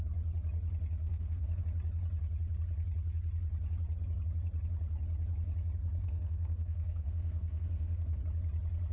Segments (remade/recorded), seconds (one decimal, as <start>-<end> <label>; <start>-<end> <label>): 0.0-1.0 recorded; 1.0-1.6 remade; 1.6-6.0 recorded; 6.0-8.2 remade; 8.2-8.9 recorded